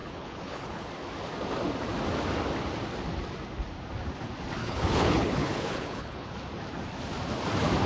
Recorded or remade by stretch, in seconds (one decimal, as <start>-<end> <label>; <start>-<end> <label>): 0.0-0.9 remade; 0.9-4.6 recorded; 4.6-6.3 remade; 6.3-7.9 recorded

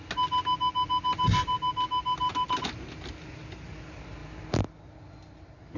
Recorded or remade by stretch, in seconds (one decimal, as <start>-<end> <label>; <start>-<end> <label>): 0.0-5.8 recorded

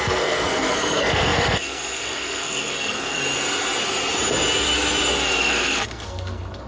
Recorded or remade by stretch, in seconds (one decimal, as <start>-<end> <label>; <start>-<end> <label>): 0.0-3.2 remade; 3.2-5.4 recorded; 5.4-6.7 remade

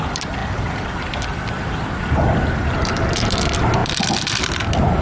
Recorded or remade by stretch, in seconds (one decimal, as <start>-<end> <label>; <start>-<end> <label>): 0.0-5.0 remade